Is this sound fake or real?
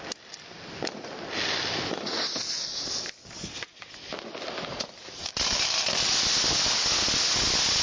real